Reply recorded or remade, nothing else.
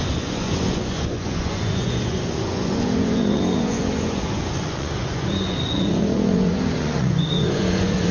remade